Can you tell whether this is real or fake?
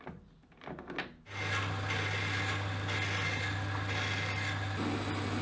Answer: real